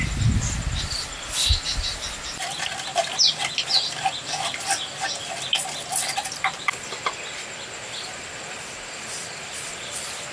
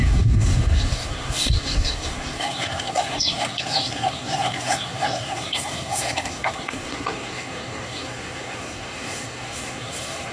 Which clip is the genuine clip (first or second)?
first